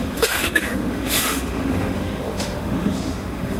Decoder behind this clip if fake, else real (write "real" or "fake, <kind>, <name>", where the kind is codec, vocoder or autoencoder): fake, autoencoder, DAC-VAE